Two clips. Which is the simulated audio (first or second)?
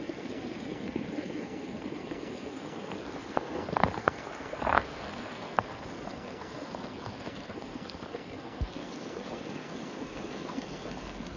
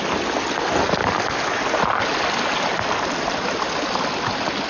first